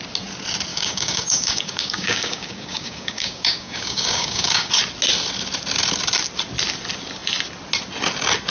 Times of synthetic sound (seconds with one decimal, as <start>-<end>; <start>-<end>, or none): 0.7-4.7